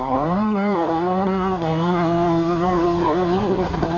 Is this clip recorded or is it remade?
remade